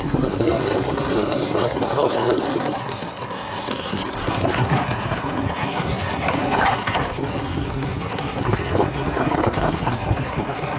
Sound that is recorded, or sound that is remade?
remade